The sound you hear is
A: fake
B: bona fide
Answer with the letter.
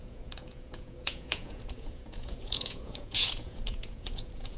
A